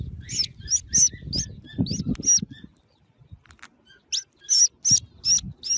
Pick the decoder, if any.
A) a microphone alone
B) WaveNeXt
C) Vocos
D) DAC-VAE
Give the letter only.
A